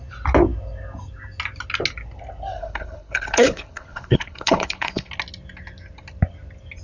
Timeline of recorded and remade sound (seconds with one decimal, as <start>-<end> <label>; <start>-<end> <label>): 0.0-2.6 recorded; 2.6-5.1 remade; 5.1-6.8 recorded